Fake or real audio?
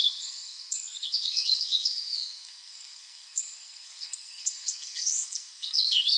fake